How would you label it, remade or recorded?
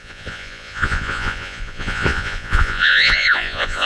remade